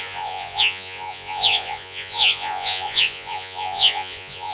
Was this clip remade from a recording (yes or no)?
yes